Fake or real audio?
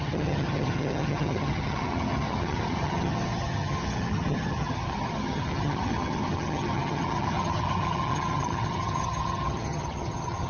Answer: fake